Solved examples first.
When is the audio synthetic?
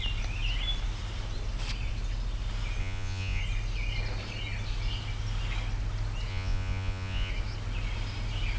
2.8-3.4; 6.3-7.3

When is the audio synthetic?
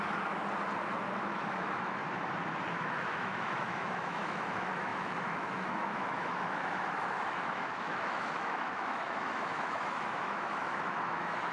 0.0-0.4; 1.2-2.0; 2.7-11.5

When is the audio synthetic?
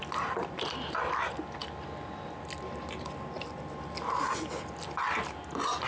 none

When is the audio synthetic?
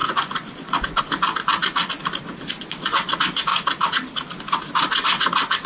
0.0-1.0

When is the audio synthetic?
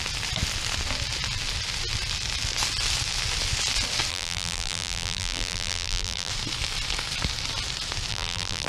4.1-6.3; 8.1-8.7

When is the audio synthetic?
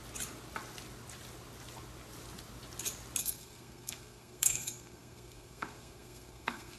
3.2-6.8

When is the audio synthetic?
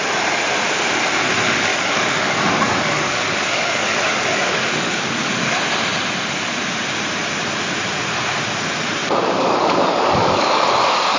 1.7-5.3; 9.0-11.2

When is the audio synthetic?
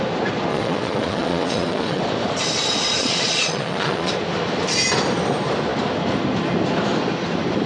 0.5-2.0; 3.0-4.1